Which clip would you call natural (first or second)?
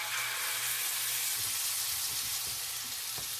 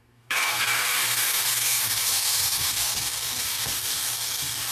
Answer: first